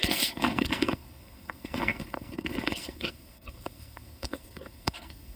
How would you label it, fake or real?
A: fake